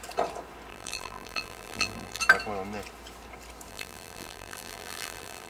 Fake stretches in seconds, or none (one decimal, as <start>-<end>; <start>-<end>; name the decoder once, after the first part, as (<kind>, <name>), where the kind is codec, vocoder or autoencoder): 0.7-2.2 (vocoder, BigVGAN v2); 3.7-5.5